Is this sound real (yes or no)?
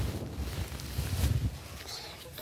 yes